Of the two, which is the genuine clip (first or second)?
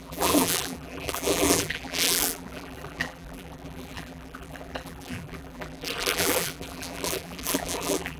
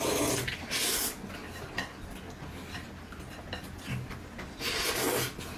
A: second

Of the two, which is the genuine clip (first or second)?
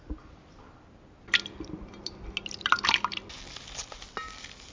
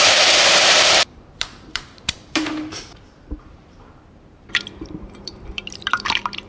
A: first